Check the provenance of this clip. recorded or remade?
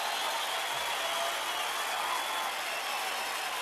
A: recorded